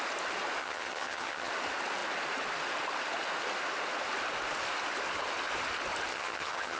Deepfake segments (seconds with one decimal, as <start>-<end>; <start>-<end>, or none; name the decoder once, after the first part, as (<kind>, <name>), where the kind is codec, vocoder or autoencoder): 0.6-1.5 (vocoder, HiFi-GAN); 6.1-6.8